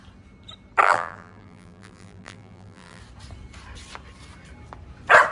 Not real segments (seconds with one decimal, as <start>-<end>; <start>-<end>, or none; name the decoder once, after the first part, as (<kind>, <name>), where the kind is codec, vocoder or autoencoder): 0.8-3.0 (vocoder, BigVGAN v2)

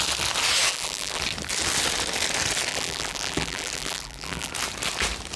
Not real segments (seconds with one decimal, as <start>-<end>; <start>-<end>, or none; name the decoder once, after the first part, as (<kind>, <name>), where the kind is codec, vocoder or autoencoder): 0.7-1.2 (vocoder, BigVGAN v2); 2.7-4.5

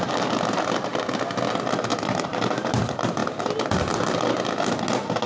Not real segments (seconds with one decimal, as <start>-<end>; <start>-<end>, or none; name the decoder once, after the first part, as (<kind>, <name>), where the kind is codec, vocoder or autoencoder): 1.9-2.7 (vocoder, BigVGAN v2)

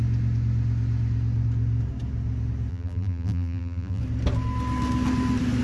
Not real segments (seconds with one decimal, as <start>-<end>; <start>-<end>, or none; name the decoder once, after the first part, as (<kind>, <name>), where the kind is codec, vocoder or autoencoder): 2.7-4.0 (vocoder, BigVGAN v2)

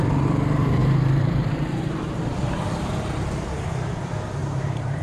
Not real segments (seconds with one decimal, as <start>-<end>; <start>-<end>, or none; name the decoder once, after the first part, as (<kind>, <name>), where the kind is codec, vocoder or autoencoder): 0.8-2.9 (vocoder, BigVGAN v2); 4.4-5.0

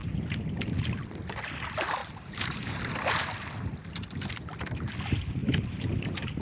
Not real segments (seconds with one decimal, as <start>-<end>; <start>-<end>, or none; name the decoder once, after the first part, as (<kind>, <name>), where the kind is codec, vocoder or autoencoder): 2.0-2.8 (vocoder, BigVGAN v2); 5.4-6.4